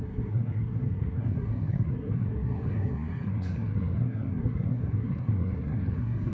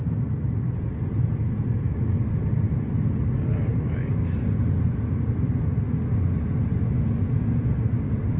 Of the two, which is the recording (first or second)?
second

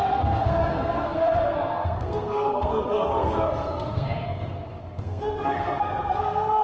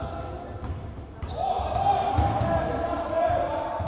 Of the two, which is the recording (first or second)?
second